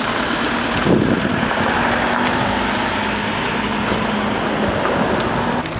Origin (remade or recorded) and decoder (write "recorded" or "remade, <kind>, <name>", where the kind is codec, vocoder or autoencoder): recorded